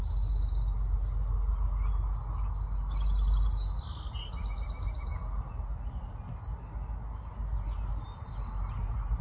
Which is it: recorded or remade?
recorded